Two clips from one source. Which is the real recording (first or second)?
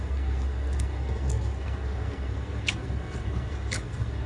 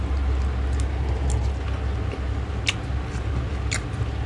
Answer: second